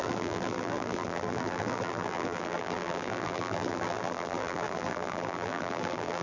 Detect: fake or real fake